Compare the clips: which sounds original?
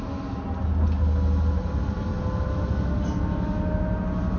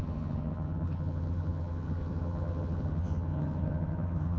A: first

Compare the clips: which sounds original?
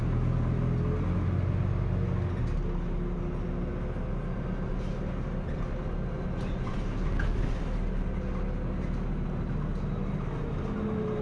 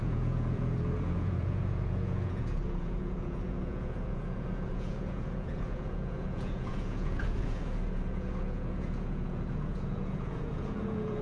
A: first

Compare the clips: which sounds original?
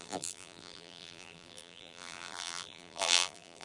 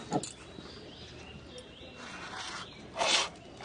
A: second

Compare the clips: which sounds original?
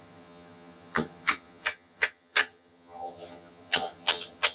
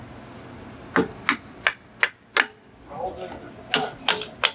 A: second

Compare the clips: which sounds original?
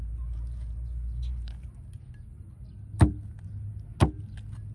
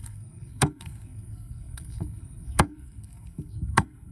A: first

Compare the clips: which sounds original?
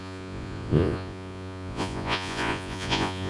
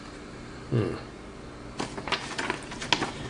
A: second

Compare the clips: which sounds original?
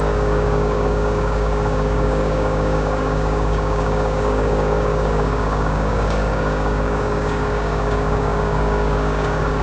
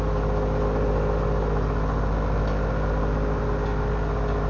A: second